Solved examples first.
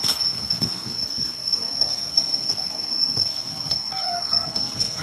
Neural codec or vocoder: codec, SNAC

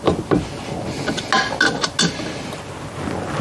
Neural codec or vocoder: none